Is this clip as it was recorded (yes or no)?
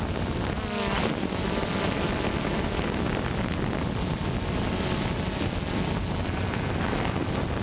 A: yes